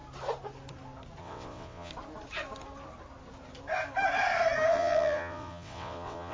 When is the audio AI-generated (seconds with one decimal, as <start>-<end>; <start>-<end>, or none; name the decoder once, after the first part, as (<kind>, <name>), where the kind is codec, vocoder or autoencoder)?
1.2-1.9 (vocoder, WaveNeXt); 4.7-6.3